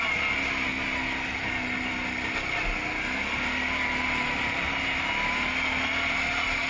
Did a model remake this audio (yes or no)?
no